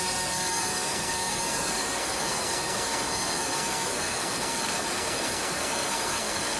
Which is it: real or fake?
fake